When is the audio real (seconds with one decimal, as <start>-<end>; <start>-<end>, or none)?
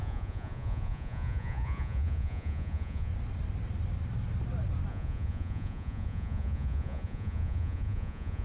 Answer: 3.1-4.9